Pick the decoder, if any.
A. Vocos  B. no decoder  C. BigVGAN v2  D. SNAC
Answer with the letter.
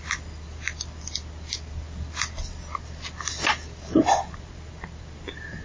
B